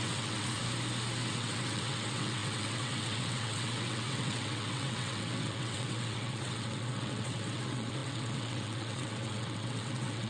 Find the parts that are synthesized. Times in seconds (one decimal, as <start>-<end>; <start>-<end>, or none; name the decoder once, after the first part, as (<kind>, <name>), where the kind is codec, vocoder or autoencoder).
0.0-0.6 (vocoder, WaveNeXt); 1.3-10.3